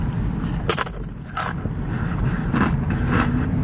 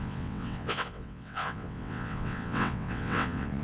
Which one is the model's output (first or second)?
second